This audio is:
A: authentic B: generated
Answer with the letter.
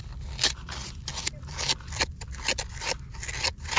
A